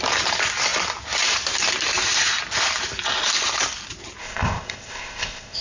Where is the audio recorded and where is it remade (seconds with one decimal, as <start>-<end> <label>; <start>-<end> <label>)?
0.0-4.2 recorded; 4.2-5.6 remade